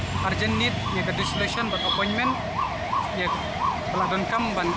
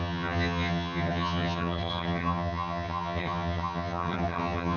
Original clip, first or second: first